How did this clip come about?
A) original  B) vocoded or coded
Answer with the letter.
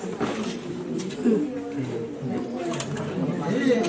A